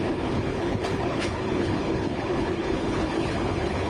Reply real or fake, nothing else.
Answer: fake